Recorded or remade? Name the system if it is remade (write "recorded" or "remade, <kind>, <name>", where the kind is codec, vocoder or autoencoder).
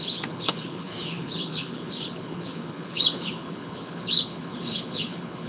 remade, codec, HILCodec